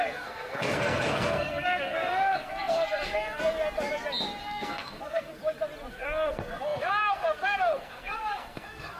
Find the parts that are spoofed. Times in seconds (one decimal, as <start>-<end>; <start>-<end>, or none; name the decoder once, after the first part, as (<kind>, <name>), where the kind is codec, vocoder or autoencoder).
0.0-3.4 (codec, SNAC); 4.4-5.4; 5.9-9.0